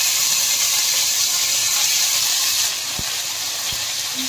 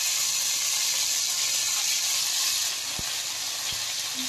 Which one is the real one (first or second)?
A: second